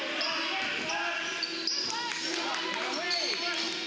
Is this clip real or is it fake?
real